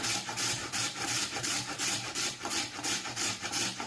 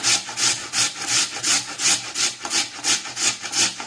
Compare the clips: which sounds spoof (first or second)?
first